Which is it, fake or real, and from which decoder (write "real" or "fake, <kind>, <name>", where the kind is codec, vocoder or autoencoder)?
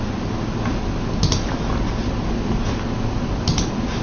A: real